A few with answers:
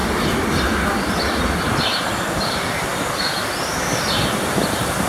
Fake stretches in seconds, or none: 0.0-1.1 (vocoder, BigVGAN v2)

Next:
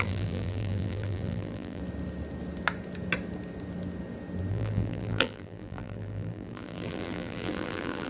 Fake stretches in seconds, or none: 0.0-1.8 (vocoder, BigVGAN v2); 4.5-8.1

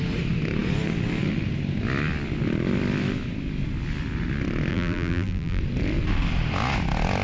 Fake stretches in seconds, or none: 4.7-5.6 (vocoder, BigVGAN v2)

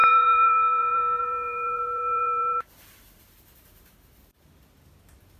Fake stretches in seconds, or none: 0.0-3.2 (vocoder, BigVGAN v2)

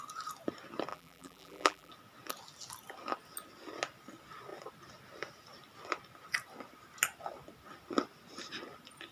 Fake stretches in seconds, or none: 0.9-1.9 (vocoder, BigVGAN v2)

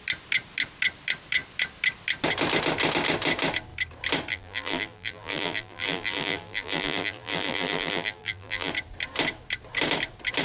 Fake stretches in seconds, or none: 4.3-8.7 (vocoder, BigVGAN v2)

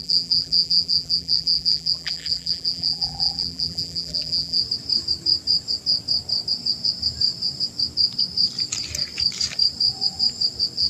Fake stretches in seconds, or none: 0.0-4.6 (vocoder, BigVGAN v2)

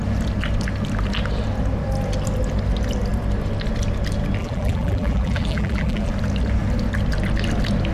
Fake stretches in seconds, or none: 4.4-6.1 (vocoder, BigVGAN v2)